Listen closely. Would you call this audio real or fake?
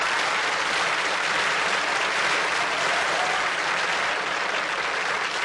real